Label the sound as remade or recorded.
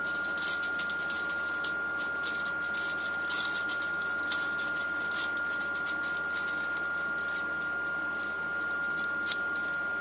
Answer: recorded